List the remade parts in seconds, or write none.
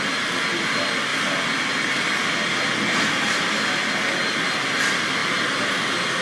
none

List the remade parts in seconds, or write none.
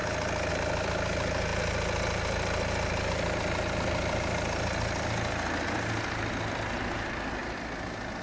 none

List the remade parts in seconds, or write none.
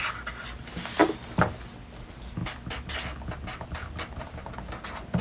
none